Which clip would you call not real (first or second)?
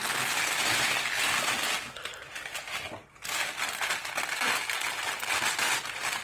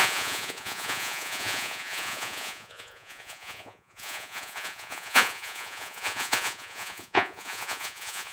second